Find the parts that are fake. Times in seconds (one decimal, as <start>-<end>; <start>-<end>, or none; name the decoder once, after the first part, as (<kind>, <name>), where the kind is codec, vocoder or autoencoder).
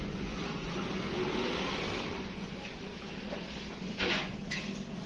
0.0-0.8 (vocoder, Vocos); 2.1-2.9; 3.8-4.3